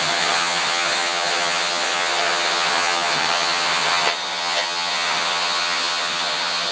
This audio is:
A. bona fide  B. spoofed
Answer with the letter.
B